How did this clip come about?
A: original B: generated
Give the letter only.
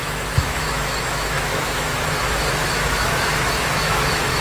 B